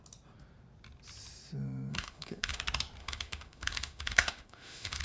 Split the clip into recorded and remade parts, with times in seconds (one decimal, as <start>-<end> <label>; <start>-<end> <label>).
0.0-1.9 recorded; 1.9-2.6 remade; 2.6-3.0 recorded; 3.0-5.0 remade